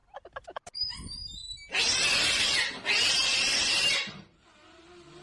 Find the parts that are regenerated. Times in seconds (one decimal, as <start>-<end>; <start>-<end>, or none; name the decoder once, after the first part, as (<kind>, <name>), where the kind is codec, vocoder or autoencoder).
none